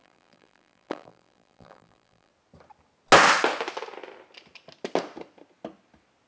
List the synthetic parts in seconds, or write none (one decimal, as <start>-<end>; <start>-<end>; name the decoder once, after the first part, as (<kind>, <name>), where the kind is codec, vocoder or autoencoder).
0.0-2.3 (vocoder, BigVGAN v2)